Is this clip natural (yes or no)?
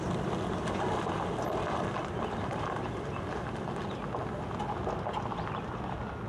yes